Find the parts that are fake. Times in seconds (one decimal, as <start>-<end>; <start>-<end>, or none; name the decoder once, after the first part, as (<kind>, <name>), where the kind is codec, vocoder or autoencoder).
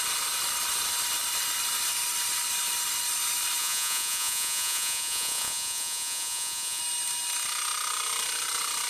3.6-6.8 (vocoder, Vocos)